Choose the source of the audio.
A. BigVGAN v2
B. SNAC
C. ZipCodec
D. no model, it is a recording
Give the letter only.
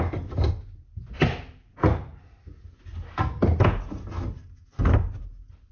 D